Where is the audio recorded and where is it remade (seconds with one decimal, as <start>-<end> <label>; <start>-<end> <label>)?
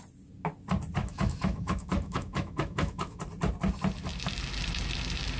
0.0-1.0 recorded; 1.0-3.2 remade; 3.2-5.4 recorded